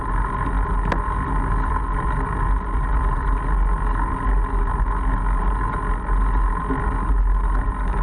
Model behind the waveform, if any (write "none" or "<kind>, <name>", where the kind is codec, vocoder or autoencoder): none